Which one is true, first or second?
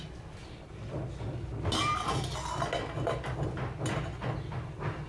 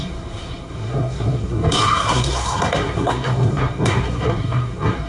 first